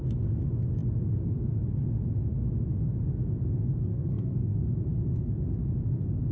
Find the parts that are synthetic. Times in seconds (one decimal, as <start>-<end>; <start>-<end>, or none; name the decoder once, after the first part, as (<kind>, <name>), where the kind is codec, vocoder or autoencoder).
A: 3.9-4.7 (codec, SNAC)